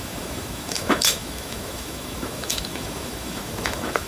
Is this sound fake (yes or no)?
yes